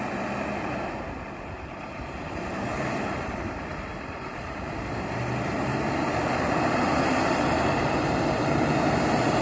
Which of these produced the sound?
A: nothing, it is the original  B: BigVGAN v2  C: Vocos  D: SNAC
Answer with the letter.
B